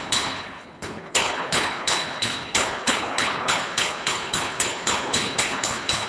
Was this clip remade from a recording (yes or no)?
yes